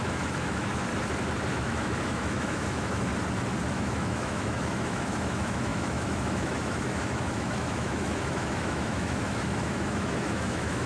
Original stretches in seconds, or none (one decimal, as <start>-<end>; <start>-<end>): 0.9-1.5; 3.1-3.7